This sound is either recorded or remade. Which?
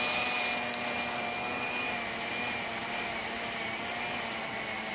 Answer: recorded